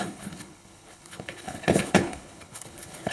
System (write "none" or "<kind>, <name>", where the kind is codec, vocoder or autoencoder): codec, HILCodec